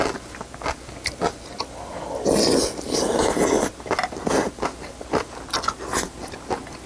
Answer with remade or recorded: recorded